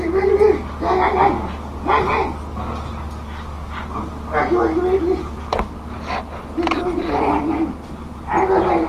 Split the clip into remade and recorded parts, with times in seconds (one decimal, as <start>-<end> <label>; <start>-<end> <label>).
0.0-8.9 recorded